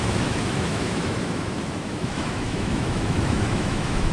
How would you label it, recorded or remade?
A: remade